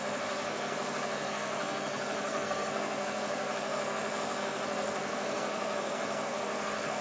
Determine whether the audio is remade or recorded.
remade